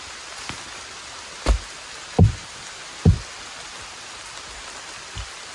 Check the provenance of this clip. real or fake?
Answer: real